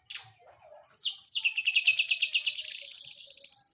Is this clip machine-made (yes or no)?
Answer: no